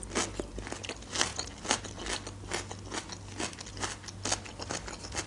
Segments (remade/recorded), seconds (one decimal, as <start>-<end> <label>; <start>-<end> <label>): 0.0-5.3 recorded